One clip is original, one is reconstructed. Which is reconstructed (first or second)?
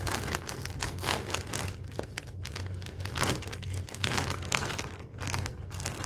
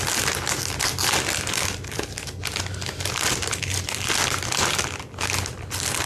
first